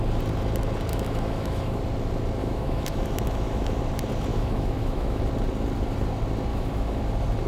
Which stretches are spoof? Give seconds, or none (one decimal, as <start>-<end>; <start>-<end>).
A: 0.9-1.8; 2.4-3.8; 4.3-5.2; 6.5-7.0